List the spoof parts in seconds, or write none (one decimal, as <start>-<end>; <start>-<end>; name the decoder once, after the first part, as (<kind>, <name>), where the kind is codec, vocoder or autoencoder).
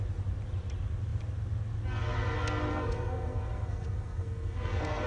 2.7-5.1 (codec, SNAC)